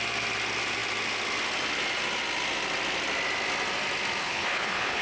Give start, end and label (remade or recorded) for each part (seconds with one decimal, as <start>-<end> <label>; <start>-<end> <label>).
0.0-4.2 recorded; 4.2-5.0 remade